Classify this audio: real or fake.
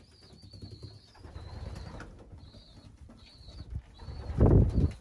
real